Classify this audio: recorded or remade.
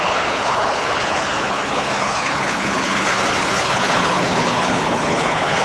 remade